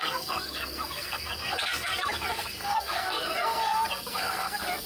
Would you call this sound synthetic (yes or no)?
yes